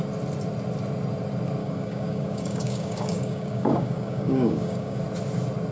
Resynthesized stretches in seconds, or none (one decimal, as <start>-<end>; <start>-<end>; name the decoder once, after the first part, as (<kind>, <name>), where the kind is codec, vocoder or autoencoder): 1.6-5.0 (codec, DAC)